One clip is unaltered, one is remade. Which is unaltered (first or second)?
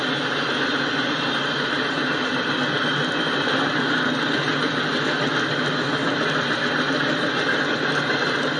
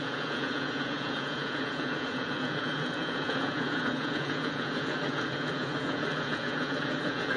first